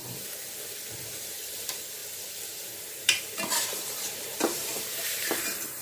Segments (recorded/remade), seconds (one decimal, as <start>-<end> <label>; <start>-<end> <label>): 0.0-1.2 recorded; 1.2-5.8 remade